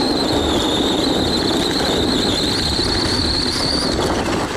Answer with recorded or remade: recorded